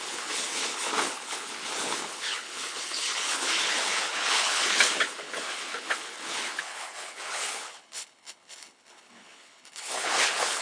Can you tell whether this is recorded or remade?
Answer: remade